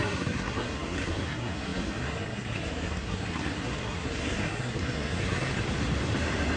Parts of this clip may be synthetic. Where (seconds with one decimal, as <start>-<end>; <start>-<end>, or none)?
0.0-5.5